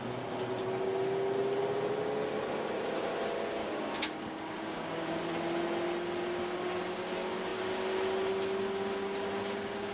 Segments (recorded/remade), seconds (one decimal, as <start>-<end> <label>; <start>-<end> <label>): 0.0-3.6 recorded; 3.6-5.2 remade; 5.2-9.9 recorded